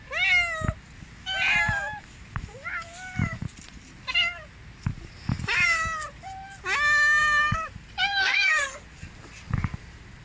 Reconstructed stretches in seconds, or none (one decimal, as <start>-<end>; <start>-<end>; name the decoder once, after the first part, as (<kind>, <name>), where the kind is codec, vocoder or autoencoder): 8.1-8.8 (codec, SNAC)